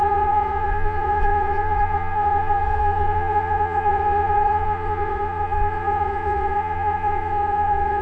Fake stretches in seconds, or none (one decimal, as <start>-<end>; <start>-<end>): 0.0-8.0